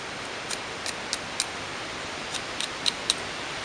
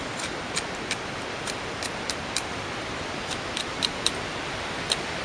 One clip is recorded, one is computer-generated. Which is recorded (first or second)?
first